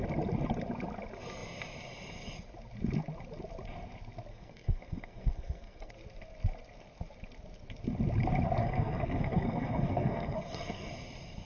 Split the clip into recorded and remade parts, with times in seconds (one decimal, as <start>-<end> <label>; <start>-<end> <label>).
0.0-4.3 recorded; 4.3-5.9 remade; 5.9-8.6 recorded; 8.6-10.9 remade; 10.9-11.4 recorded